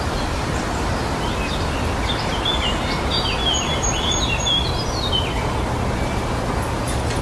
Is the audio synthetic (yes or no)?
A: no